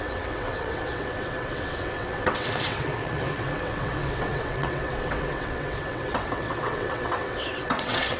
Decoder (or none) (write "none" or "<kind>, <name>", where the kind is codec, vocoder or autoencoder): vocoder, WaveNeXt